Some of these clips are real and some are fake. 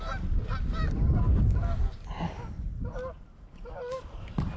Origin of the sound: real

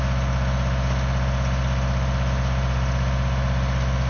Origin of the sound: real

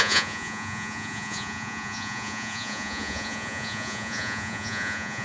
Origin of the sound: fake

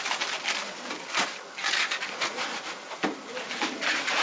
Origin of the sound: real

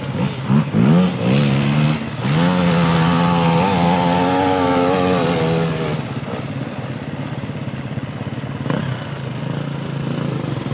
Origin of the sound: real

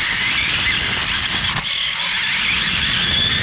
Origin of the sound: real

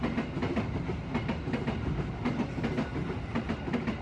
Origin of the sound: real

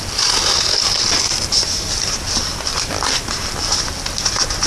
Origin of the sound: real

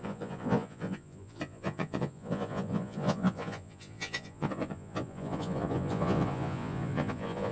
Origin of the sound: fake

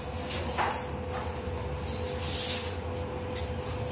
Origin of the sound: real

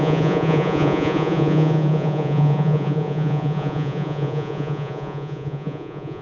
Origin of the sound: fake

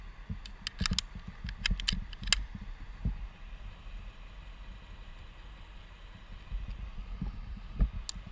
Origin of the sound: real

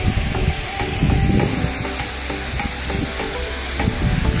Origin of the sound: real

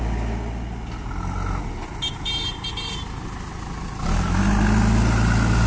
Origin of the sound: real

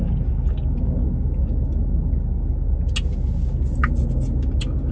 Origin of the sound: real